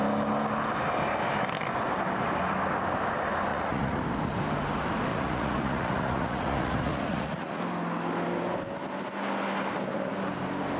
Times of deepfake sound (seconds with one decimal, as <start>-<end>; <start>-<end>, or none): 3.5-4.0; 5.1-7.6